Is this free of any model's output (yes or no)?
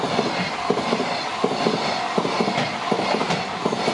yes